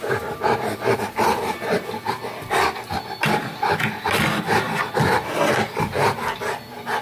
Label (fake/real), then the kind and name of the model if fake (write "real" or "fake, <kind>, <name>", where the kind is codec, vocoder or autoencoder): real